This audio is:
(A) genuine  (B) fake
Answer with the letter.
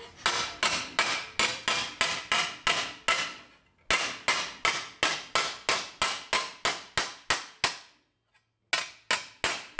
A